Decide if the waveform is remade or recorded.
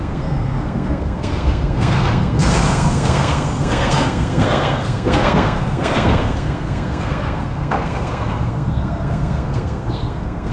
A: remade